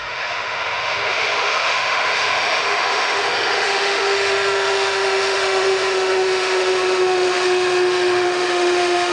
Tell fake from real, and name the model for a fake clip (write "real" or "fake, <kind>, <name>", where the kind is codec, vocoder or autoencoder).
fake, autoencoder, DAC-VAE